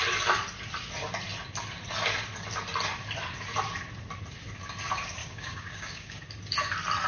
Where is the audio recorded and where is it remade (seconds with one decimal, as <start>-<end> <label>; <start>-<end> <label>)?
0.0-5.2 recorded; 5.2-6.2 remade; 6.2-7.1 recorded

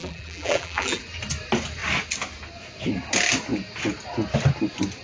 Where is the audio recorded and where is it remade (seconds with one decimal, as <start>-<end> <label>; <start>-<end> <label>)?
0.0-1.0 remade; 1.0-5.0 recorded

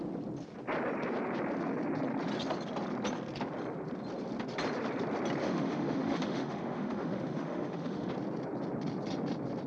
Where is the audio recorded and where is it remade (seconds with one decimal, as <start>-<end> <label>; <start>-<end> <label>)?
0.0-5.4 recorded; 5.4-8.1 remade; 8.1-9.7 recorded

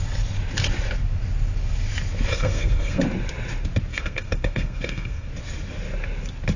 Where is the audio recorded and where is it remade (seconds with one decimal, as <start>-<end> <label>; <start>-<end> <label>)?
0.0-2.3 recorded; 2.3-3.0 remade; 3.0-3.9 recorded; 3.9-5.3 remade; 5.3-6.6 recorded